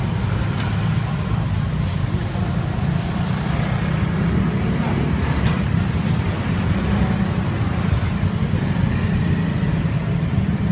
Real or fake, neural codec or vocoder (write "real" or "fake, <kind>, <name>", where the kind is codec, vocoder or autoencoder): real